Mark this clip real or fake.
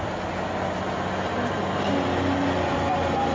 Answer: real